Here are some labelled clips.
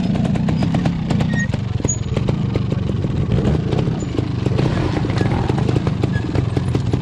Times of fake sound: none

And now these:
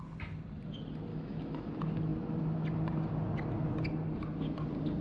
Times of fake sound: 1.1-1.7 (autoencoder, DAC-VAE)

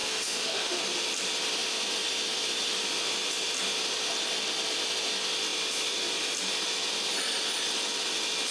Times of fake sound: 0.0-0.8 (autoencoder, DAC-VAE)

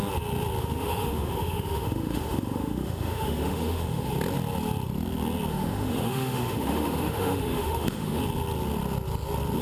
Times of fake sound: 0.6-4.1 (autoencoder, DAC-VAE); 5.5-8.2

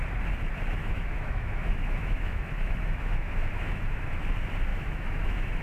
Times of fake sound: 0.8-4.2 (autoencoder, DAC-VAE); 4.7-5.6